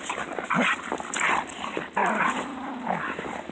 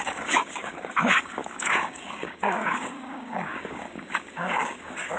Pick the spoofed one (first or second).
second